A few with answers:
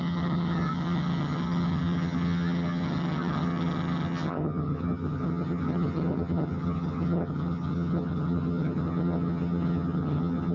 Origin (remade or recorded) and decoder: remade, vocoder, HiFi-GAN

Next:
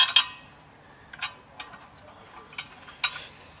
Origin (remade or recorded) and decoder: recorded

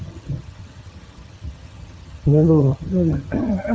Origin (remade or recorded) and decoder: remade, vocoder, HiFi-GAN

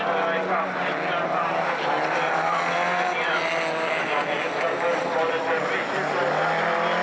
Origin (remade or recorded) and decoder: recorded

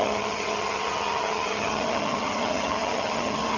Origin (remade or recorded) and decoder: remade, vocoder, HiFi-GAN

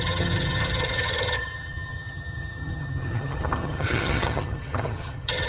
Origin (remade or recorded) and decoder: remade, vocoder, HiFi-GAN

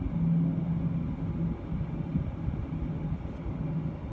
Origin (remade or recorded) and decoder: recorded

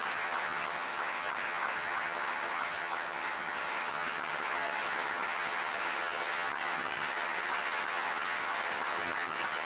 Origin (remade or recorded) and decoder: remade, vocoder, HiFi-GAN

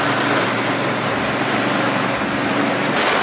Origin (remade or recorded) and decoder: recorded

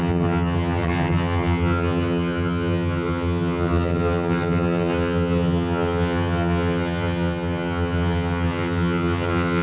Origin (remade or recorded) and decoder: remade, vocoder, HiFi-GAN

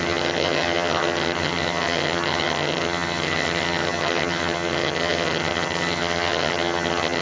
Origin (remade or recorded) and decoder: remade, vocoder, HiFi-GAN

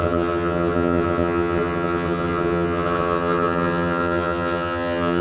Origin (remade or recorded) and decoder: remade, vocoder, HiFi-GAN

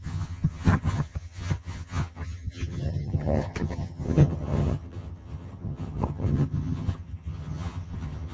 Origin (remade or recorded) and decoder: remade, vocoder, HiFi-GAN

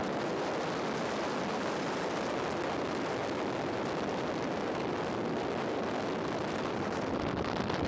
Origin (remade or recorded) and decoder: recorded